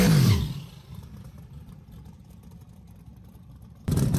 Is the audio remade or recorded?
remade